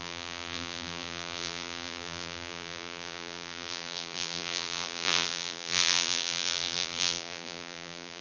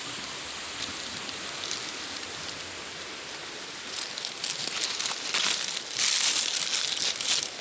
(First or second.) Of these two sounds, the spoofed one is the first